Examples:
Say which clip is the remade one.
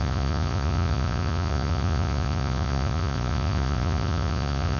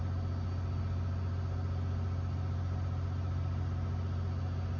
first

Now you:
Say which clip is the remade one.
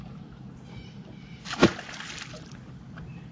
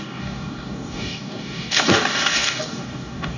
second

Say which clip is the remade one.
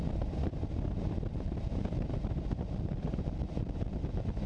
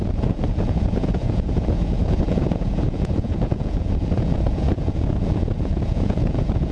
second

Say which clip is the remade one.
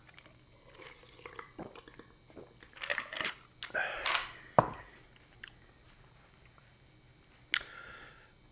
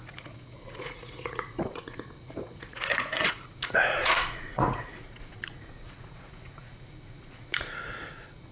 second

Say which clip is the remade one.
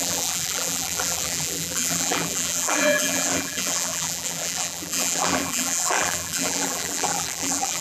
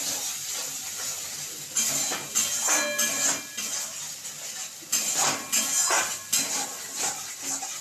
first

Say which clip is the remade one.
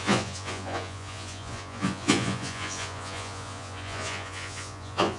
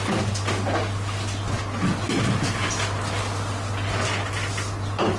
first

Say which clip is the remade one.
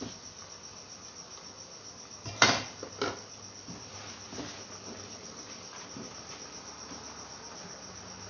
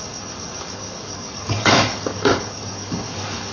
second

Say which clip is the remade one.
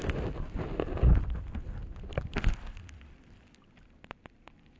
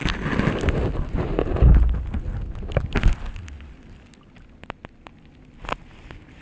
first